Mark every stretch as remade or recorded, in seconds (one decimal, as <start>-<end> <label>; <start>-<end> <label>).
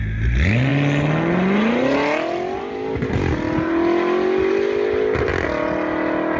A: 0.0-6.4 recorded